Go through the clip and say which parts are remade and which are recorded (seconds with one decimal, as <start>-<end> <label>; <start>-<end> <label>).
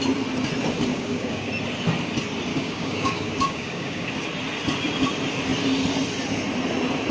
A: 0.0-0.9 recorded; 0.9-1.5 remade; 1.5-2.5 recorded; 2.5-4.1 remade; 4.1-7.1 recorded